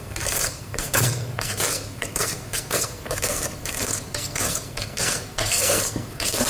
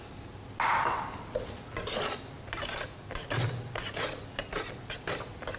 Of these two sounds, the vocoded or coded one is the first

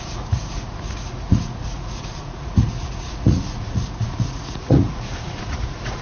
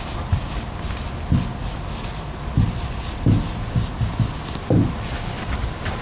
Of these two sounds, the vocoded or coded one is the first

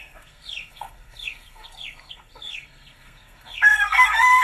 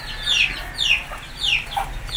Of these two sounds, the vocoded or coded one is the first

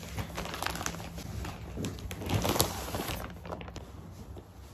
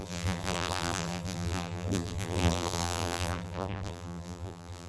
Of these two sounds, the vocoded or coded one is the second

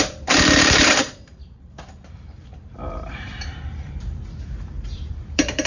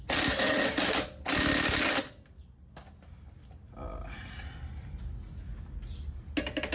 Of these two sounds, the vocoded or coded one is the first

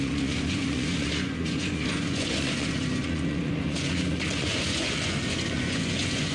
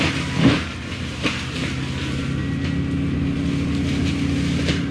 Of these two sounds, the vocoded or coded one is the first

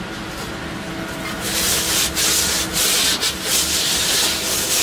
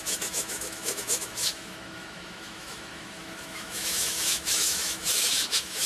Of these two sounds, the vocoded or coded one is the second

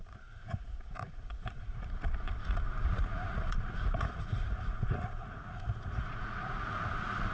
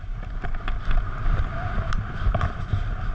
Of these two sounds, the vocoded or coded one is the first